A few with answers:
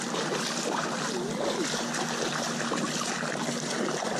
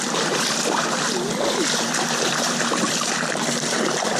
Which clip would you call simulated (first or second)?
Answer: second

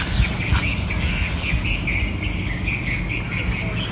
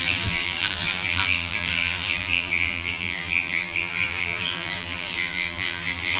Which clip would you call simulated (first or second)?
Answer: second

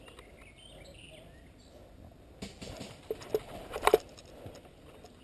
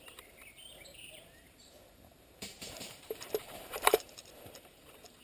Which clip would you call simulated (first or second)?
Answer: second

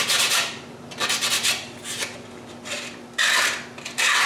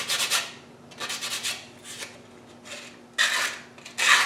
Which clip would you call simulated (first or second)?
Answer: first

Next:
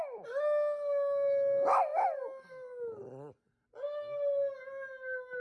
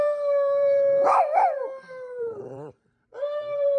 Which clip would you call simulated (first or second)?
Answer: second